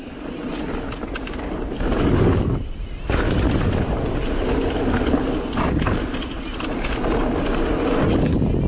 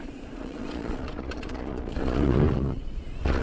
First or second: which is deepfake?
second